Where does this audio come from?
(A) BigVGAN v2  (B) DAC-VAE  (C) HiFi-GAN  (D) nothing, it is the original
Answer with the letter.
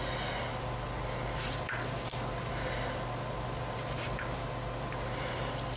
D